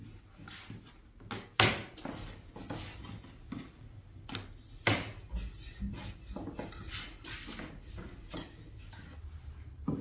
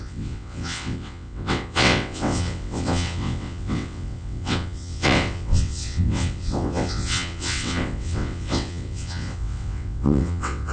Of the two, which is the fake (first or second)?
second